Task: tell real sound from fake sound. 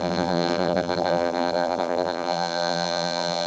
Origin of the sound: fake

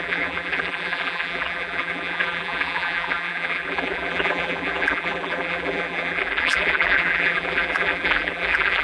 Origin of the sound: fake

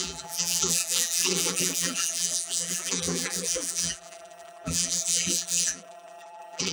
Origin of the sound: fake